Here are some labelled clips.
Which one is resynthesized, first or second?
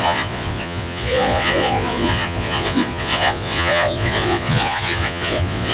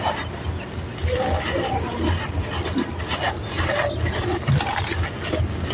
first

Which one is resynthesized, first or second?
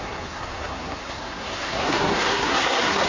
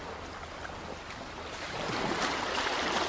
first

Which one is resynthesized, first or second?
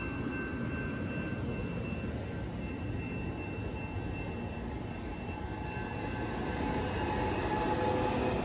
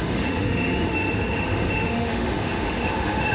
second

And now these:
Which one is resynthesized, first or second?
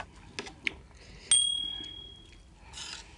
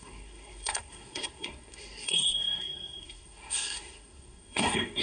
second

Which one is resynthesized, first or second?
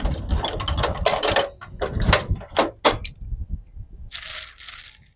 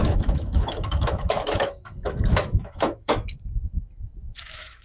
second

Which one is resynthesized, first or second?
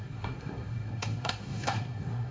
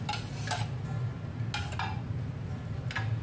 first